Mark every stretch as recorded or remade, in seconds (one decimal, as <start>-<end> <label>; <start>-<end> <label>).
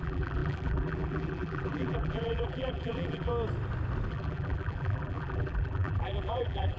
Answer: 0.0-3.3 remade; 3.3-4.1 recorded; 4.1-6.8 remade